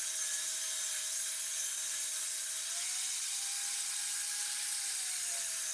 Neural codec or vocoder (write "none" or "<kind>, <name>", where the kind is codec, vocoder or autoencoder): none